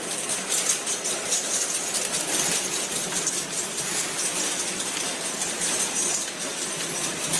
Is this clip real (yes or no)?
yes